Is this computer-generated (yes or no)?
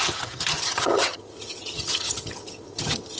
yes